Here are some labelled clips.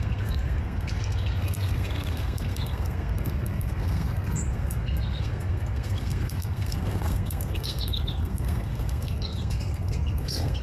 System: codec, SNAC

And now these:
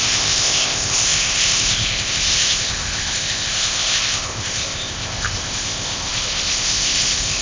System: codec, ZipCodec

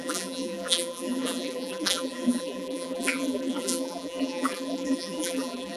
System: vocoder, BigVGAN v2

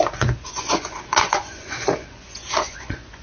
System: vocoder, Vocos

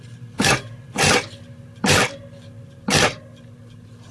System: vocoder, BigVGAN v2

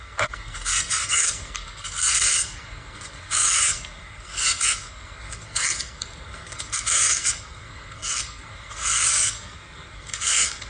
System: codec, SNAC